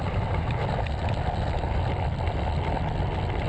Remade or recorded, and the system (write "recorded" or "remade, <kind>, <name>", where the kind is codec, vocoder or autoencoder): recorded